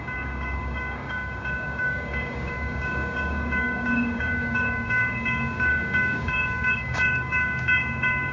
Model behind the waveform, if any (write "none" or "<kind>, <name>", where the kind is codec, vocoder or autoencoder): codec, DAC